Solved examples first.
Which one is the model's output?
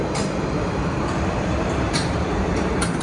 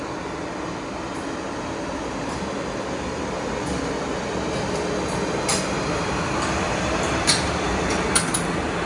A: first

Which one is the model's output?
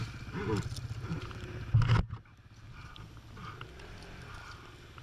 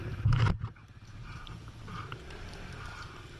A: second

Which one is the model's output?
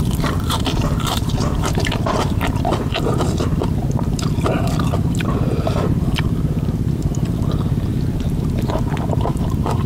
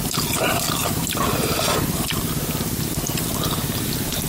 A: first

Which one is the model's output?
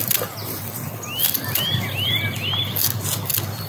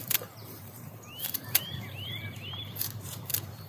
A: second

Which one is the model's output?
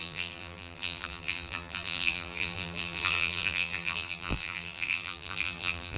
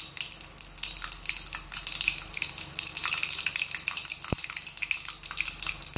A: first